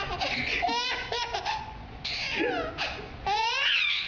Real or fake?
fake